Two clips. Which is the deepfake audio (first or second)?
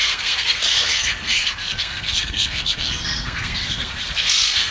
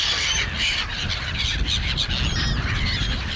first